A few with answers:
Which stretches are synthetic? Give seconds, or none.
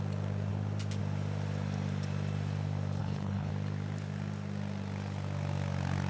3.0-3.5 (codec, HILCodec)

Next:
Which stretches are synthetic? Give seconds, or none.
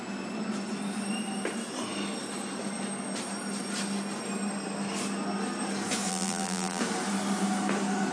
6.1-6.8 (vocoder, BigVGAN v2)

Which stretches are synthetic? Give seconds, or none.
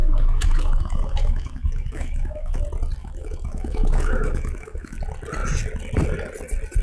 0.0-2.6 (autoencoder, DAC-VAE); 3.0-5.0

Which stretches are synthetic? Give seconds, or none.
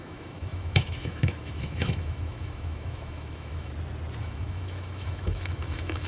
0.0-3.7 (autoencoder, DAC-VAE); 4.2-6.1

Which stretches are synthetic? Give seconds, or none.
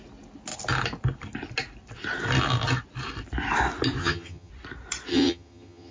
4.0-4.5 (vocoder, HiFi-GAN); 5.1-5.9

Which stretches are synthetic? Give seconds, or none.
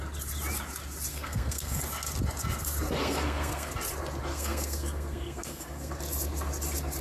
1.1-1.8 (codec, SNAC); 3.0-3.7; 4.3-5.9